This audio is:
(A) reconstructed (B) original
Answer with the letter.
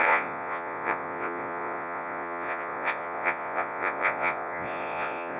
A